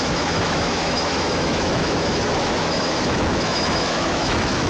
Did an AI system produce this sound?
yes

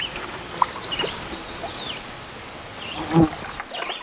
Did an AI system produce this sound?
no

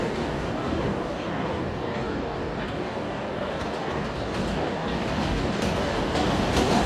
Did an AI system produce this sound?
yes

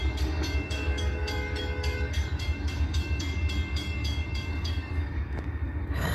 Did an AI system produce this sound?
yes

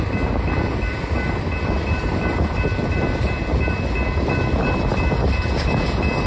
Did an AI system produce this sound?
no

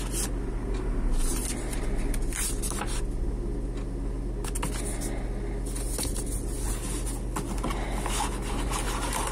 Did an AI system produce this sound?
no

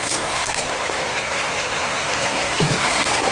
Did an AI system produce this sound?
yes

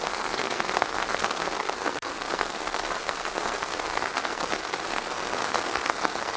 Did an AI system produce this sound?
yes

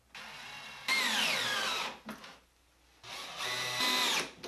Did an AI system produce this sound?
no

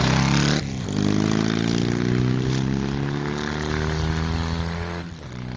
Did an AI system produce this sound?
no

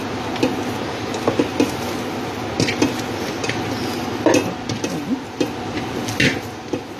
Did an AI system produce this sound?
no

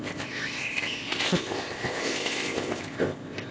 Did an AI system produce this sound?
yes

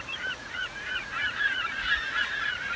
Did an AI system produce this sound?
yes